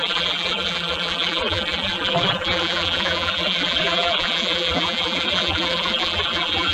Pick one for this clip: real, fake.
fake